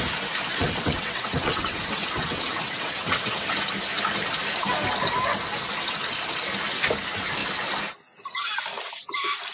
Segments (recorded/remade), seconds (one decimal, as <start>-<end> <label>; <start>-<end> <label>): 0.0-0.5 recorded; 0.5-3.3 remade; 3.3-9.5 recorded